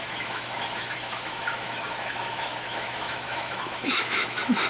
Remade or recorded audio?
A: remade